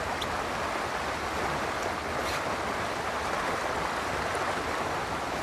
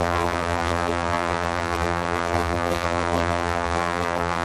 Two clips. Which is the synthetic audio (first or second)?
second